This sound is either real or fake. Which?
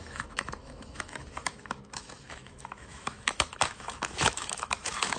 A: fake